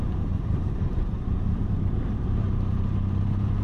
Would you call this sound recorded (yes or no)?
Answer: no